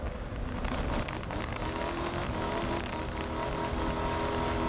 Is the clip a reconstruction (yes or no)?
no